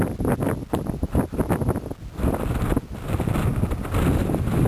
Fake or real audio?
real